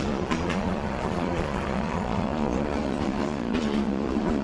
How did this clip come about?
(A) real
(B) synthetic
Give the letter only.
B